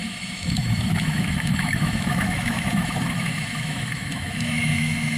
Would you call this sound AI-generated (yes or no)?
yes